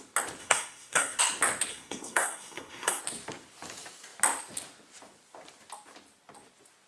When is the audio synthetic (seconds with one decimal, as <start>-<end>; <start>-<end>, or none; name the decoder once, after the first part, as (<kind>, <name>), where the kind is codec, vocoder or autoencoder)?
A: 0.4-1.2 (codec, SNAC); 1.7-3.0

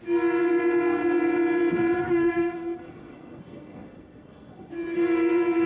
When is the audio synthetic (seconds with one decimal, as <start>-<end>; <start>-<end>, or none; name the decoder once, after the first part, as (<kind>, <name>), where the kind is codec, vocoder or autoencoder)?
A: 2.0-4.7 (codec, SNAC)

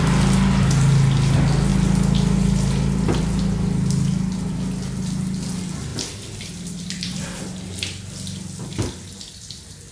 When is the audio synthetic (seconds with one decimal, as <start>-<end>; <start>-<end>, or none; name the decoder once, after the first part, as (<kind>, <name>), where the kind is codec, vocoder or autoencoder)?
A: none

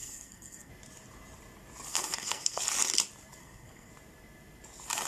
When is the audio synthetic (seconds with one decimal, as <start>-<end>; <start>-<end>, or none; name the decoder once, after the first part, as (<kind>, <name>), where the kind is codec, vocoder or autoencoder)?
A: 0.0-0.7 (codec, SNAC); 1.9-2.6; 3.4-3.9

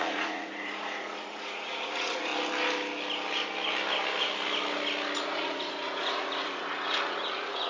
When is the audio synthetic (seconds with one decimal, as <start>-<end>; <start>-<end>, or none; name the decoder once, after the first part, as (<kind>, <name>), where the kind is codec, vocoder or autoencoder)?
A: 0.0-2.3 (vocoder, Vocos); 5.2-7.7

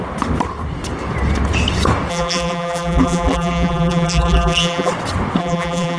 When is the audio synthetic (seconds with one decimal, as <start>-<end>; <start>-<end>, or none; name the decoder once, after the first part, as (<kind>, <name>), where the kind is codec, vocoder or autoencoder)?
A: 2.1-4.9 (vocoder, BigVGAN v2); 5.4-6.0

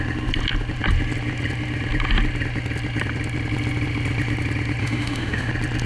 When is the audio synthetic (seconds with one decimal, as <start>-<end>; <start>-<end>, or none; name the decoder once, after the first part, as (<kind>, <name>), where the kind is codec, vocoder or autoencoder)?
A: 4.8-5.5 (autoencoder, DAC-VAE)